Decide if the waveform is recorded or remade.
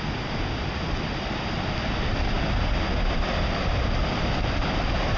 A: recorded